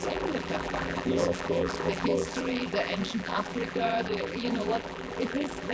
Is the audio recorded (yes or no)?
no